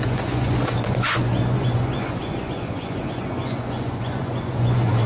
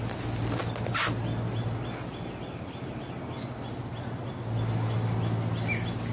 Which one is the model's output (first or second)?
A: first